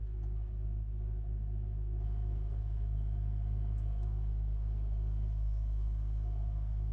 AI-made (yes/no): yes